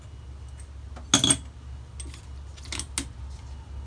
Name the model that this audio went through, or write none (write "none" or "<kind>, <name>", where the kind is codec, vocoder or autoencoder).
none